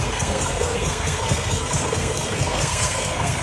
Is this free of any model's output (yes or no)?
no